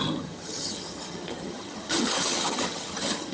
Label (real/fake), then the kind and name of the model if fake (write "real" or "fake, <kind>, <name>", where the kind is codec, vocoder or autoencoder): fake, vocoder, HiFi-GAN